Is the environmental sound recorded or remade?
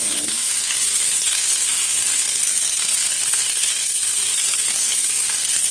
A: remade